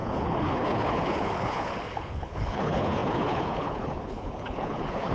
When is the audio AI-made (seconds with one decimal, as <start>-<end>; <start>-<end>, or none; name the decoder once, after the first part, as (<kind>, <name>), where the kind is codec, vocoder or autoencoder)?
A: 0.0-5.1 (codec, HILCodec)